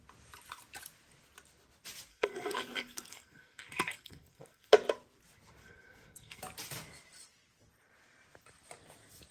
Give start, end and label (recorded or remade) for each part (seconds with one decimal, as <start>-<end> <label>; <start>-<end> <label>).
0.0-2.1 recorded; 2.1-4.7 remade; 4.7-5.6 recorded; 5.6-6.4 remade; 6.4-9.3 recorded